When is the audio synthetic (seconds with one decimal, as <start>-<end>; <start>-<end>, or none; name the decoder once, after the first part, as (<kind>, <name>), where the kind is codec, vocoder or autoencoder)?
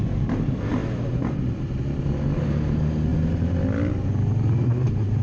none